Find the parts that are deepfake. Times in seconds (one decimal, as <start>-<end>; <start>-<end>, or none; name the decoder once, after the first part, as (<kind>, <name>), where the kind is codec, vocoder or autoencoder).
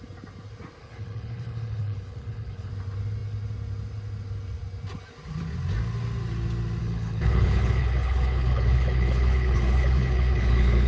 0.8-2.7 (codec, HILCodec); 6.8-10.9